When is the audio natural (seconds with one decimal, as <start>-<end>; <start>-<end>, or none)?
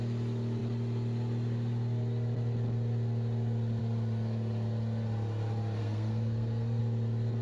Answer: 0.0-5.8; 6.8-7.4